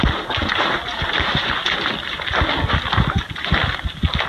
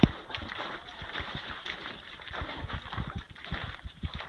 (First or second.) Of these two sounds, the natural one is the first